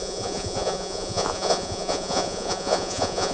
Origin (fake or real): fake